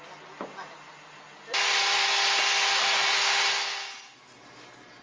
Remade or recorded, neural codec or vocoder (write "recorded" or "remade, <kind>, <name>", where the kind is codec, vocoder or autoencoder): recorded